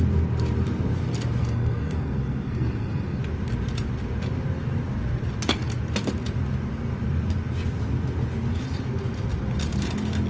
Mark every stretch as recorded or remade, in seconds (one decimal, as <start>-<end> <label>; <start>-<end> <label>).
0.0-1.4 recorded; 1.4-3.2 remade; 3.2-10.3 recorded